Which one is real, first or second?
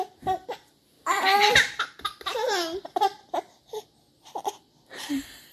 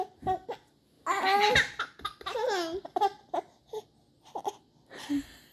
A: second